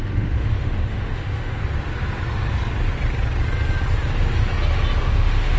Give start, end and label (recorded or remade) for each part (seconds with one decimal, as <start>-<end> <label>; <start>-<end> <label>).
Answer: 0.0-1.6 remade; 1.6-5.0 recorded; 5.0-5.6 remade